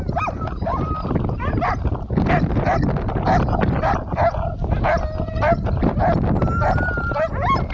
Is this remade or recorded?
recorded